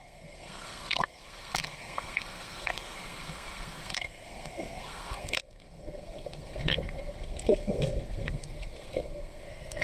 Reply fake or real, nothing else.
fake